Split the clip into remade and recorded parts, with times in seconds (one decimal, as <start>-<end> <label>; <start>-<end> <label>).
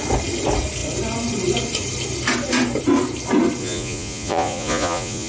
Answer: 0.0-3.6 recorded; 3.6-5.3 remade